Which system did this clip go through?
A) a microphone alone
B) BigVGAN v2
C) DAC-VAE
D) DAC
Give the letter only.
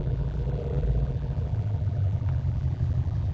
B